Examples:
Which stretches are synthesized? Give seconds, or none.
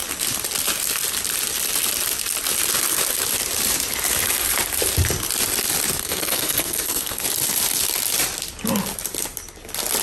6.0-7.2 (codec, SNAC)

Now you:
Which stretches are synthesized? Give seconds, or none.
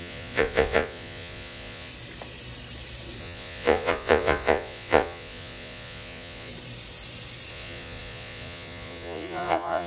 0.0-1.9 (vocoder, Vocos); 3.2-6.5; 7.5-9.9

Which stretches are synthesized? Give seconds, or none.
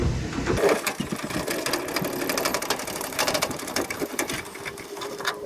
2.5-5.5 (vocoder, BigVGAN v2)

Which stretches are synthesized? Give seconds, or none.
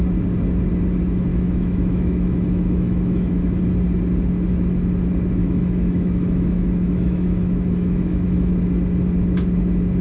1.3-3.6 (autoencoder, DAC-VAE); 5.4-8.5